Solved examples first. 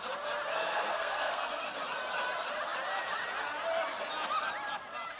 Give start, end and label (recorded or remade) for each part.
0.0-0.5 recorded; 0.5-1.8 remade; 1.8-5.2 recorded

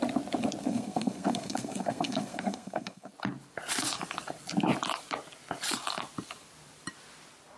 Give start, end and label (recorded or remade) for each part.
0.0-0.6 recorded; 0.6-3.1 remade; 3.1-7.6 recorded

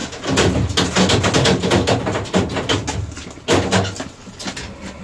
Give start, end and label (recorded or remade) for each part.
0.0-5.0 recorded

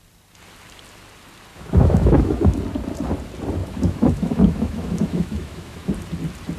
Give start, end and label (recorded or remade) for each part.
0.0-1.5 recorded; 1.5-2.6 remade; 2.6-3.6 recorded; 3.6-5.9 remade; 5.9-6.6 recorded

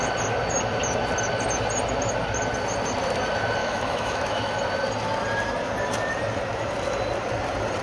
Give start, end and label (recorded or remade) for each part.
0.0-3.6 recorded; 3.6-4.6 remade; 4.6-7.8 recorded

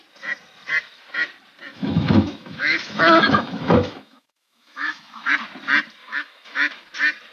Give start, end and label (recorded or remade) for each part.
0.0-1.7 recorded; 1.7-5.3 remade; 5.3-6.0 recorded; 6.0-6.8 remade; 6.8-7.3 recorded

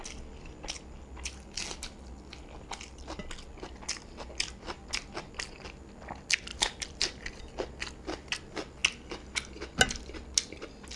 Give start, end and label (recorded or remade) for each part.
0.0-6.5 recorded; 6.5-7.4 remade; 7.4-11.0 recorded

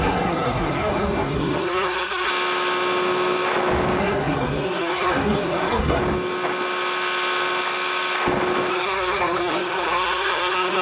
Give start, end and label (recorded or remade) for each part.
0.0-2.3 remade; 2.3-4.0 recorded; 4.0-6.0 remade; 6.0-8.7 recorded; 8.7-10.8 remade